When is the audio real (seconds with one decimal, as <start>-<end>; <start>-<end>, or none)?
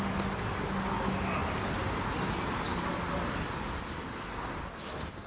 0.0-5.3